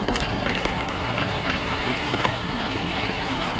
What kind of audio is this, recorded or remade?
remade